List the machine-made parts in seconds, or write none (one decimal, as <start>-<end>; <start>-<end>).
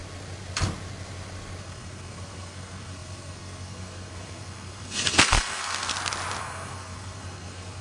1.6-5.9; 6.4-7.8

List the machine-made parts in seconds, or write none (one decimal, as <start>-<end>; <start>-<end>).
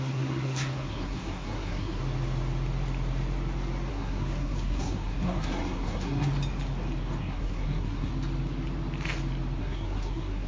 0.0-2.0; 3.9-6.3; 7.2-8.1; 9.6-10.5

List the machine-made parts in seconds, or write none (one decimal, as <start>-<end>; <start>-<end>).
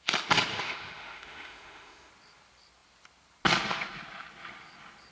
0.5-2.1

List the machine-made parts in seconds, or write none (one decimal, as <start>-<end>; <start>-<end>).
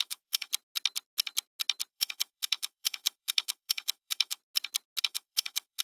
0.0-0.5; 1.9-4.4; 5.0-5.8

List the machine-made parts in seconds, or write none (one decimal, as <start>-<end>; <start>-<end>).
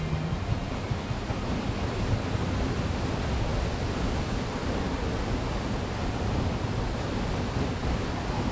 none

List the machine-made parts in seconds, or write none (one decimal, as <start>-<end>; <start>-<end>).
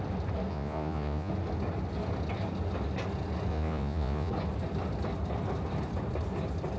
0.5-1.3; 3.5-4.3